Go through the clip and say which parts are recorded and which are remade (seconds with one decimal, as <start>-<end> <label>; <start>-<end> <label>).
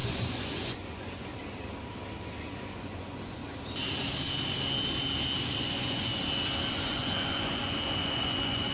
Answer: 0.0-1.3 remade; 1.3-2.4 recorded; 2.4-3.4 remade; 3.4-5.6 recorded; 5.6-6.1 remade; 6.1-6.7 recorded; 6.7-8.7 remade